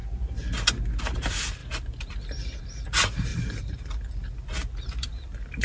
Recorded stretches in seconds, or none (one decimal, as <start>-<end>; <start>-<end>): 0.0-3.3